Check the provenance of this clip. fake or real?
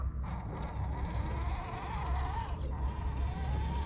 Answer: real